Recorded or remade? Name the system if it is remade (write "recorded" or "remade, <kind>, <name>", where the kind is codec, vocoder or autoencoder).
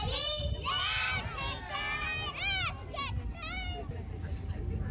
recorded